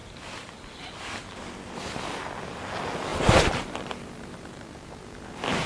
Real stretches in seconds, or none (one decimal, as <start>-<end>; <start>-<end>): 0.0-3.1